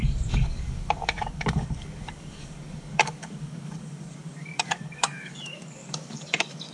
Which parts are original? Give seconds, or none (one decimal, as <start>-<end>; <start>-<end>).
none